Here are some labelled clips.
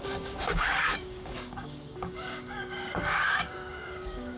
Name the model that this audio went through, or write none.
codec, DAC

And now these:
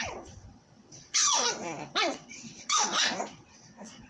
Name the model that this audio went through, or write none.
vocoder, WaveNeXt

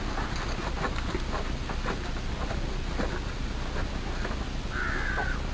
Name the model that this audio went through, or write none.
none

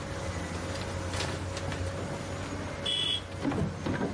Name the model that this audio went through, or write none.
none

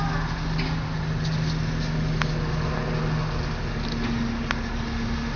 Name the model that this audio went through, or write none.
none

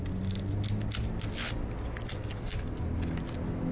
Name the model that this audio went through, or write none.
none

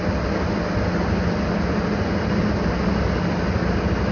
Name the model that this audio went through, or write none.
none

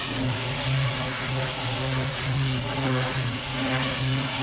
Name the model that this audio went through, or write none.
vocoder, Vocos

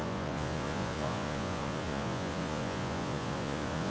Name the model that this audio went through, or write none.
vocoder, Vocos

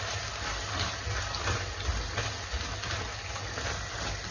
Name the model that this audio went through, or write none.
none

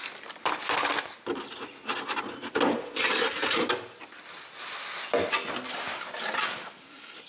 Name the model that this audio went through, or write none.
none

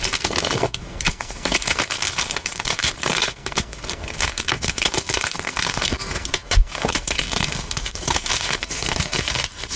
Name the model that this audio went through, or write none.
codec, SNAC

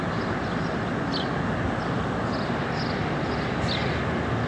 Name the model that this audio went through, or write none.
none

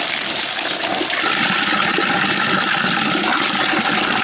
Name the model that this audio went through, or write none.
none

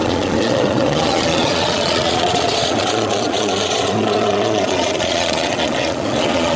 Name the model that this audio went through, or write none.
vocoder, Vocos